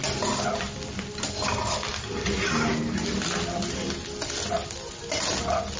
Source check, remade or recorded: recorded